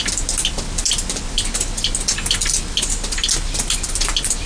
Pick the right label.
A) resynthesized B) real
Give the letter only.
B